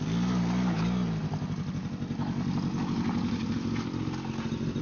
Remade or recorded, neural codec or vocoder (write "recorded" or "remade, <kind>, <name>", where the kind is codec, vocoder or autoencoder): recorded